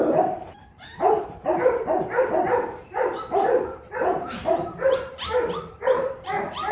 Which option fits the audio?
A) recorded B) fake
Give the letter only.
B